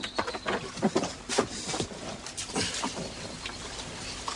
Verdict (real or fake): fake